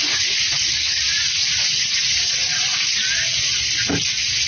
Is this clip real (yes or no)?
yes